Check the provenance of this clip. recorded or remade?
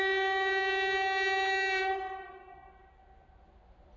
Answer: recorded